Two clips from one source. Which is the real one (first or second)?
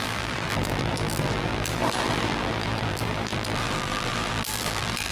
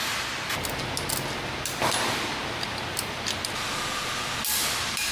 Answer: second